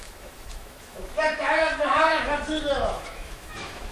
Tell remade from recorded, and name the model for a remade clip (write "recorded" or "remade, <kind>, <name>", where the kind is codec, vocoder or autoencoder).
remade, autoencoder, DAC-VAE